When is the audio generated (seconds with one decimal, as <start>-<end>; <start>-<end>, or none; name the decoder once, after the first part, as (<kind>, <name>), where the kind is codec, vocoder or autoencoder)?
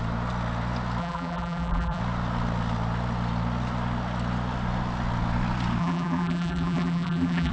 1.0-2.0 (vocoder, BigVGAN v2); 5.8-7.5